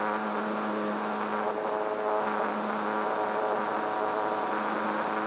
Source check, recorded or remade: recorded